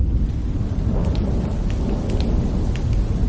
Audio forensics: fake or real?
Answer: real